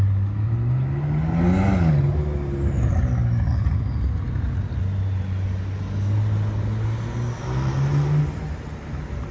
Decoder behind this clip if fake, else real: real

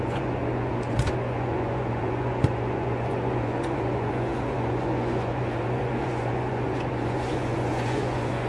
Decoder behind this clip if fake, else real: fake, vocoder, Vocos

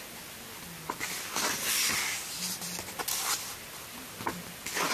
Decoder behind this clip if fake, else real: real